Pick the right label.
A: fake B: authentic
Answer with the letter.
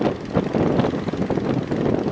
B